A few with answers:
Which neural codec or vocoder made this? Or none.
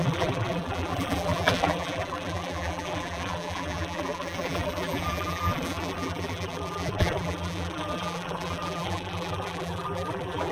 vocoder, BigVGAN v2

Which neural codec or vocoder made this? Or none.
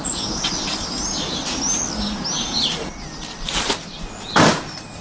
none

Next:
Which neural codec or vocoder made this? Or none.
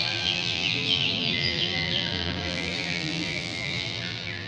vocoder, BigVGAN v2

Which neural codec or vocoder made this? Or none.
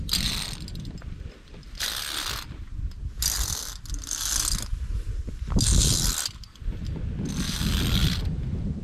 none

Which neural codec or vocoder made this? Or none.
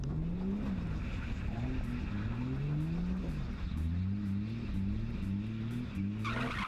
none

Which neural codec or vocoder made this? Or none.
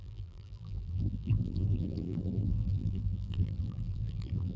vocoder, BigVGAN v2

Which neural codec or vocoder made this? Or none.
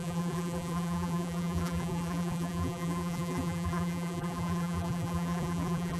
vocoder, BigVGAN v2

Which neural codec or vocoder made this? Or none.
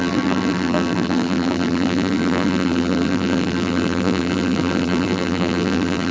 vocoder, BigVGAN v2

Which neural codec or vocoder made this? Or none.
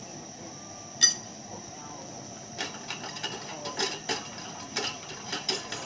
vocoder, BigVGAN v2